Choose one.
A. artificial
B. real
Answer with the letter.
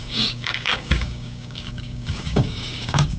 A